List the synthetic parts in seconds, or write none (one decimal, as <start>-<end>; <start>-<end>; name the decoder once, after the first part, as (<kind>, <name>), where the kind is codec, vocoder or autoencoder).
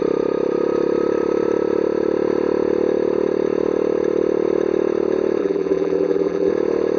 5.4-6.5 (vocoder, BigVGAN v2)